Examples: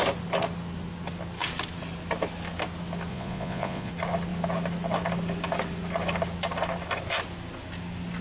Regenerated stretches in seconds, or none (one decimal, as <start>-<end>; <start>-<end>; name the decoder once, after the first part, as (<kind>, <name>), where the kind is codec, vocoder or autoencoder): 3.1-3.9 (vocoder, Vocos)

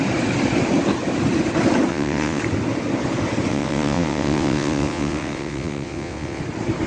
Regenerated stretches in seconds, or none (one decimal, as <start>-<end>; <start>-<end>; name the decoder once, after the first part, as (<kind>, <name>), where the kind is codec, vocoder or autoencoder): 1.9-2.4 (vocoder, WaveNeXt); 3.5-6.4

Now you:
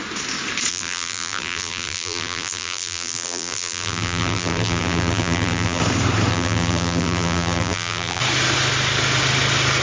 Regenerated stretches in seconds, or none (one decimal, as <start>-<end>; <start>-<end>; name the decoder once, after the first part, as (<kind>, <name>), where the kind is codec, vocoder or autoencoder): 0.7-5.8 (vocoder, BigVGAN v2); 6.3-8.2

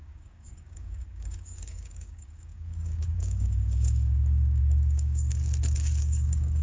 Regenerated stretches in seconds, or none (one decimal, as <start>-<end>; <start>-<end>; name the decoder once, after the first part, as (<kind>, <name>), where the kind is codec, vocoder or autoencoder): 0.0-5.4 (codec, DAC); 6.0-6.6

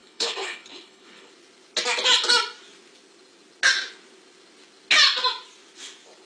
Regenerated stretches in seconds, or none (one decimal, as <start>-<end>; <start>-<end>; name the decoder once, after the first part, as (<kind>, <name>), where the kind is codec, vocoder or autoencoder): 0.0-1.3 (codec, HILCodec)

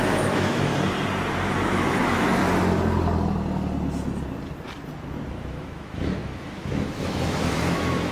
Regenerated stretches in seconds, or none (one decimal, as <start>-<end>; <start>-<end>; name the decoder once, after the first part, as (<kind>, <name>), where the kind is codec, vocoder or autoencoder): 0.0-0.7 (autoencoder, DAC-VAE); 1.5-2.4; 5.3-8.1